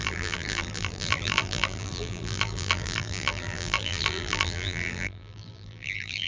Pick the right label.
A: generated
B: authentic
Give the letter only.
A